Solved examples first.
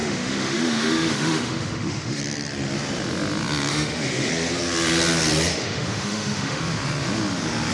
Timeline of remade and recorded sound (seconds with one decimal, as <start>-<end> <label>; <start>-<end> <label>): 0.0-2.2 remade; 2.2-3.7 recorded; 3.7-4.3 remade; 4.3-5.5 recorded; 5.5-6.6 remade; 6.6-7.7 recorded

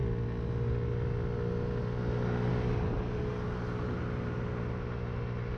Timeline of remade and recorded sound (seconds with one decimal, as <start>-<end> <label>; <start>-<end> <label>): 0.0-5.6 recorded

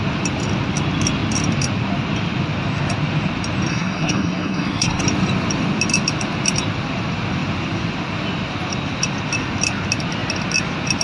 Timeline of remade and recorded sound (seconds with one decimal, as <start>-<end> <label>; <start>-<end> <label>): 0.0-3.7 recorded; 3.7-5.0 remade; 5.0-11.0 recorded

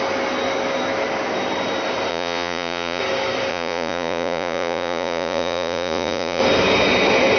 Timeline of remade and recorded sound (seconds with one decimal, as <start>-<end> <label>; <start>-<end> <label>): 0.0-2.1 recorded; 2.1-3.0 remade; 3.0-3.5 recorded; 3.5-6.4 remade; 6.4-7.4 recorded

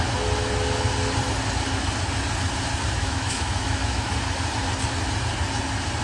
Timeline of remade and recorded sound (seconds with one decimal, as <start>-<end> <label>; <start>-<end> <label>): 0.0-3.0 recorded; 3.0-4.1 remade; 4.1-6.0 recorded

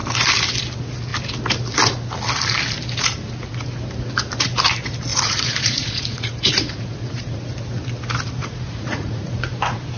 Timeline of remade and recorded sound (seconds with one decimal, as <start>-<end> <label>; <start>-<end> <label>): 0.0-5.1 recorded; 5.1-7.5 remade; 7.5-8.4 recorded; 8.4-9.6 remade; 9.6-10.0 recorded